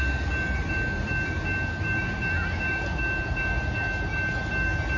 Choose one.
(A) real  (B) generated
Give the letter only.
A